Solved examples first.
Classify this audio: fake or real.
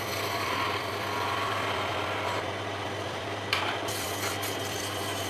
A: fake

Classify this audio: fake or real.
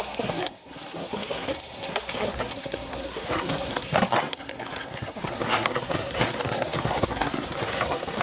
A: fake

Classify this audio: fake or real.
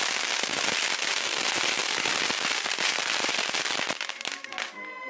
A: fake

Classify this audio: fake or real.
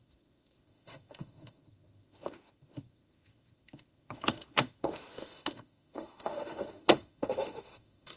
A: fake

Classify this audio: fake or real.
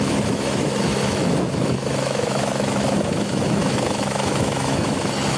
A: fake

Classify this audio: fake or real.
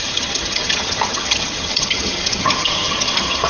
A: fake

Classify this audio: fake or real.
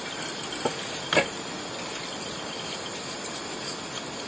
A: real